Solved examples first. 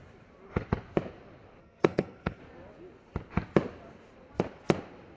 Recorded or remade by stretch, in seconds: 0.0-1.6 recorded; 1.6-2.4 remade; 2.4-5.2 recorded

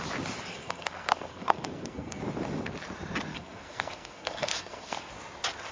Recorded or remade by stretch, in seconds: 0.0-0.5 recorded; 0.5-2.2 remade; 2.2-3.3 recorded; 3.3-5.1 remade; 5.1-5.7 recorded

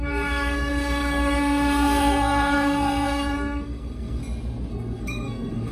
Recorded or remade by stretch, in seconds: 0.0-4.2 remade; 4.2-4.7 recorded; 4.7-5.7 remade

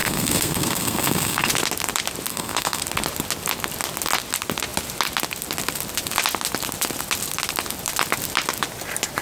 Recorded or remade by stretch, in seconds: 0.0-1.5 remade; 1.5-2.3 recorded; 2.3-2.8 remade; 2.8-9.2 recorded